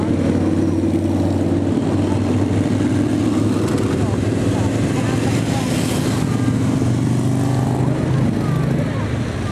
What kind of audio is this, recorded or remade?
recorded